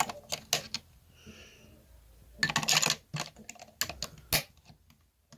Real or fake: real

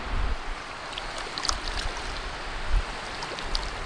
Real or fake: real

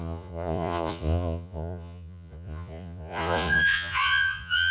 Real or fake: fake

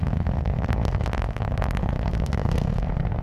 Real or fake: fake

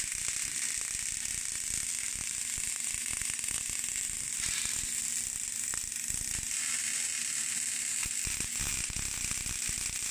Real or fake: real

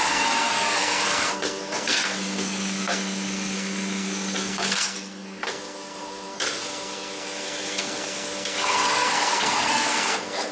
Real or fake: fake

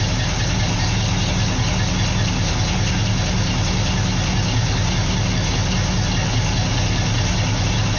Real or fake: real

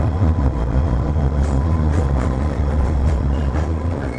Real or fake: fake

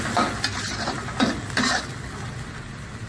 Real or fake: real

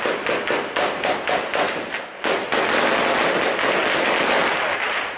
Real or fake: real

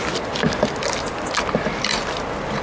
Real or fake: real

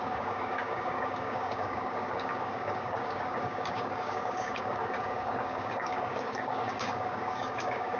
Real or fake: fake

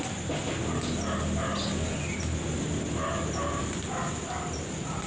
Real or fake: real